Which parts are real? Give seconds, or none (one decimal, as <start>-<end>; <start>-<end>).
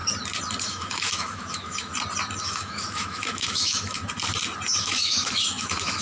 0.0-0.6; 1.9-2.4; 4.0-4.8